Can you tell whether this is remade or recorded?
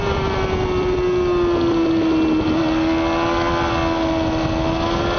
recorded